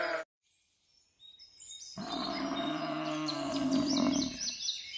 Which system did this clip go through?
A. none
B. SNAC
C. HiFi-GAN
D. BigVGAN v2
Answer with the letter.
D